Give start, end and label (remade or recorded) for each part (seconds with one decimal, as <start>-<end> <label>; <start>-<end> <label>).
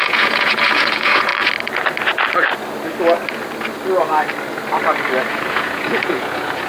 0.0-1.3 remade; 1.3-5.3 recorded; 5.3-6.7 remade